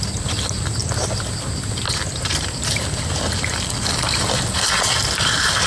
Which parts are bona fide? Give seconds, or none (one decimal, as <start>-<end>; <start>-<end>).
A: 0.0-5.7